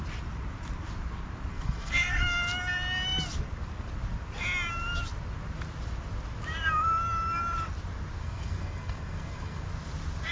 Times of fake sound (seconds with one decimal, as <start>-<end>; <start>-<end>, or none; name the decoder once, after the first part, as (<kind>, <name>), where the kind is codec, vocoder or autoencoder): 1.5-2.2 (codec, SNAC); 8.2-9.6